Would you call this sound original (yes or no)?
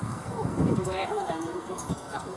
no